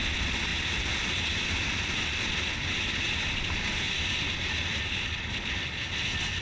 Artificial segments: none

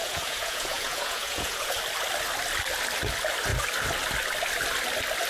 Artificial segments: 0.0-1.8 (vocoder, Vocos)